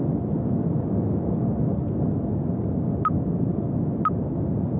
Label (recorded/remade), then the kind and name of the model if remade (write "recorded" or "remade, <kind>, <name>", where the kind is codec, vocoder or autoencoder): recorded